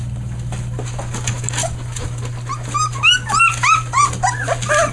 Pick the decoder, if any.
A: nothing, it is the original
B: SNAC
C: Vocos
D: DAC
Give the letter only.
A